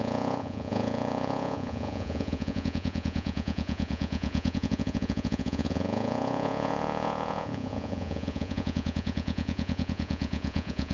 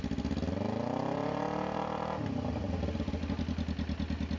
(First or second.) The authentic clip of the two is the second